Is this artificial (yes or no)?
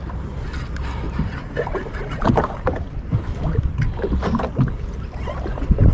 no